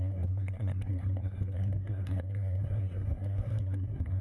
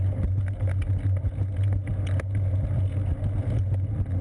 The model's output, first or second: first